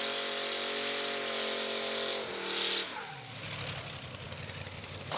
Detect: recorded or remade remade